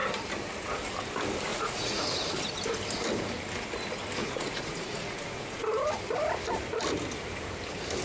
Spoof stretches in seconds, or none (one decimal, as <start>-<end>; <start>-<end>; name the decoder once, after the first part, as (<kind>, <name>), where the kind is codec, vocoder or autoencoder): 1.5-2.0 (vocoder, Vocos); 4.2-5.7